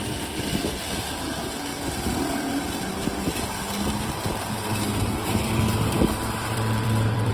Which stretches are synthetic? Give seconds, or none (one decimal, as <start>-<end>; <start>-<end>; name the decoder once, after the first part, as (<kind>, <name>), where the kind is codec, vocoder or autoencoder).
0.0-1.7 (vocoder, BigVGAN v2); 6.1-7.3